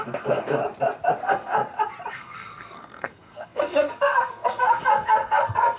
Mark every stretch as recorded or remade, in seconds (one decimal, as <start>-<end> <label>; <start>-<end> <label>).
0.0-0.6 remade; 0.6-1.2 recorded; 1.2-1.6 remade; 1.6-2.1 recorded; 2.1-5.8 remade